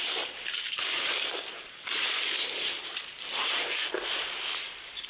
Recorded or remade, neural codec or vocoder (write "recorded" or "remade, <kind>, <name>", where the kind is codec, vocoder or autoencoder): remade, vocoder, BigVGAN v2